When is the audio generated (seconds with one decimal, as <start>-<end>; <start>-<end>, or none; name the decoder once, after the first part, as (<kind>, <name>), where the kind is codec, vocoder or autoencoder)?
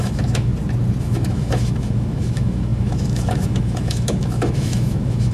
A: 0.0-0.5 (autoencoder, DAC-VAE); 1.0-5.3